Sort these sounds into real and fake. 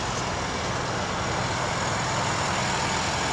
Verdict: real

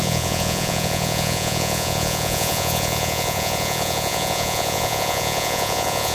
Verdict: fake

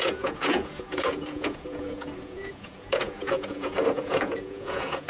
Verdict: fake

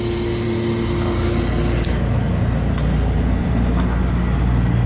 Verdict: real